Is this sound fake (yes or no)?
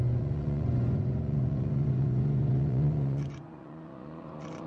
yes